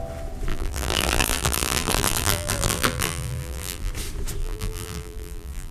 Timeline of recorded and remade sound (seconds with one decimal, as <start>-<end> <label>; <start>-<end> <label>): 0.0-0.5 recorded; 0.5-3.9 remade; 3.9-4.4 recorded; 4.4-5.7 remade